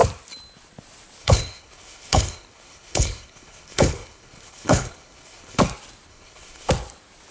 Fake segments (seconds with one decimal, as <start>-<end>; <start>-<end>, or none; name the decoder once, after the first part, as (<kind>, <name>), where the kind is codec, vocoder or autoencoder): 1.2-5.6 (codec, HILCodec); 6.1-6.7